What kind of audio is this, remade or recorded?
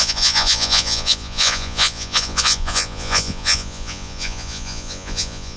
remade